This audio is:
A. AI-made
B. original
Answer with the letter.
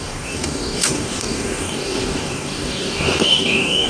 A